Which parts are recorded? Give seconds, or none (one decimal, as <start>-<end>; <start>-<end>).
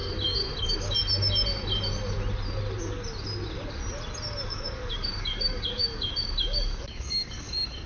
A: 0.0-0.6; 1.0-4.5